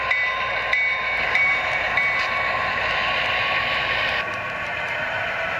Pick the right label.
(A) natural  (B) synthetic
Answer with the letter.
B